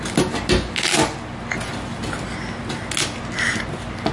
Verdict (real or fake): real